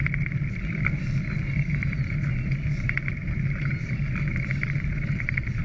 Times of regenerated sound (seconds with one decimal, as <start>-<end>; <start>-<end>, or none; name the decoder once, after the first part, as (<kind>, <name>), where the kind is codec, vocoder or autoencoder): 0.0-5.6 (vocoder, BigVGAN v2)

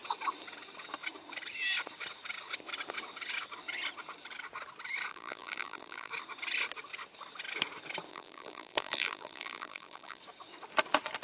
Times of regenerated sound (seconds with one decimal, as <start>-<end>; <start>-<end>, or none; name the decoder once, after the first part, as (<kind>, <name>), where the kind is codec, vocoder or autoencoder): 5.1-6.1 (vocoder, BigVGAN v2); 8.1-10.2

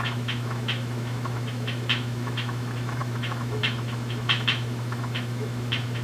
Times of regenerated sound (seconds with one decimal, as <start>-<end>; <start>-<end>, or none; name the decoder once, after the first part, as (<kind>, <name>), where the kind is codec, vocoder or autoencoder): 0.0-6.0 (autoencoder, DAC-VAE)